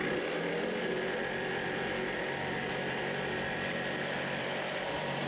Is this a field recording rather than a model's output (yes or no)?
no